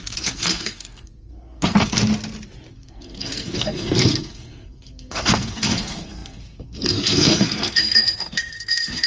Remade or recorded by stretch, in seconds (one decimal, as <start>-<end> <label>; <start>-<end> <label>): 0.0-2.0 remade; 2.0-2.7 recorded; 2.7-9.1 remade